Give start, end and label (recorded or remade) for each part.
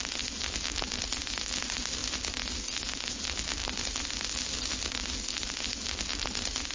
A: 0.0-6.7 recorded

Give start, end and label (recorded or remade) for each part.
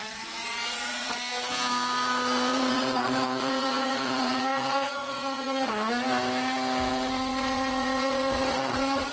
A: 0.0-1.1 remade; 1.1-2.5 recorded; 2.5-5.9 remade; 5.9-6.9 recorded; 6.9-9.1 remade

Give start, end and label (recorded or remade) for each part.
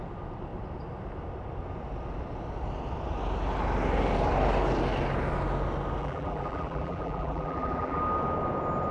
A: 0.0-6.0 recorded; 6.0-8.0 remade; 8.0-8.9 recorded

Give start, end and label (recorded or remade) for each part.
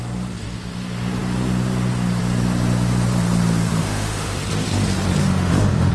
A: 0.0-3.8 recorded; 3.8-4.4 remade; 4.4-5.2 recorded; 5.2-5.9 remade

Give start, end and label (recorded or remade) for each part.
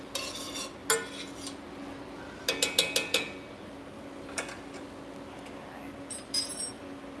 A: 0.0-7.2 recorded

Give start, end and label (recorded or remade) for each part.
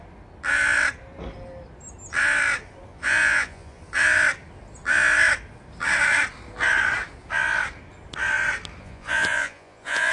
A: 0.0-2.9 recorded; 2.9-3.8 remade; 3.8-8.8 recorded; 8.8-10.1 remade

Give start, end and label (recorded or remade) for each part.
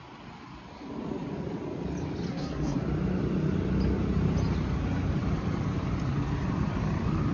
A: 0.0-2.3 recorded; 2.3-2.8 remade; 2.8-7.3 recorded